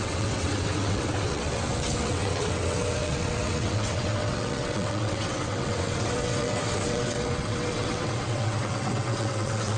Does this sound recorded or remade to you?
remade